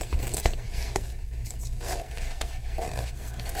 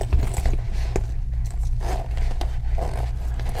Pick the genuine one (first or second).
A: second